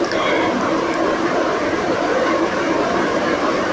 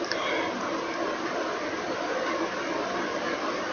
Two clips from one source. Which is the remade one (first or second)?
first